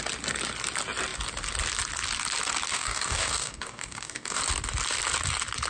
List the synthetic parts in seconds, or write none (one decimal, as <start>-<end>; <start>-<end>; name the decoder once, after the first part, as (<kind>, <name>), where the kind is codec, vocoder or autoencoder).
2.7-4.4 (codec, DAC)